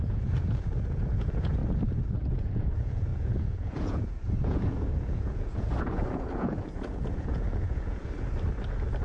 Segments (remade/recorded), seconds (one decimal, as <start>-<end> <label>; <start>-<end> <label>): 0.0-1.6 remade; 1.6-2.4 recorded; 2.4-8.0 remade; 8.0-9.0 recorded